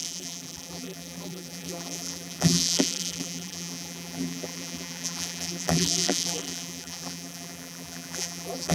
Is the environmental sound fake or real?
fake